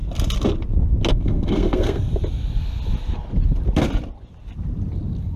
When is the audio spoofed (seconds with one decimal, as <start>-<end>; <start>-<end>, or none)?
1.1-2.1